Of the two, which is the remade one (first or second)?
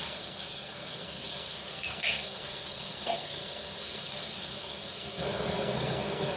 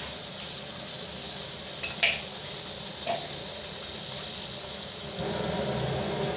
first